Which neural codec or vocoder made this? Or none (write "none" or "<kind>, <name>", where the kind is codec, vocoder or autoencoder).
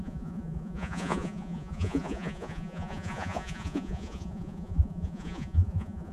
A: vocoder, Vocos